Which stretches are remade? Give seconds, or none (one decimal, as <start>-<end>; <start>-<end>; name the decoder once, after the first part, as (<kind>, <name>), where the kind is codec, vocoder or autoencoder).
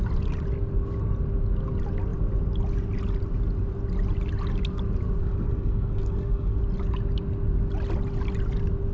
5.2-6.6 (codec, SNAC)